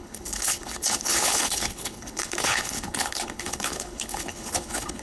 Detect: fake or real fake